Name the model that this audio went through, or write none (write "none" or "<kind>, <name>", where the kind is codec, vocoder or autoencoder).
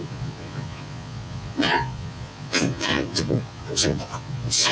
vocoder, Vocos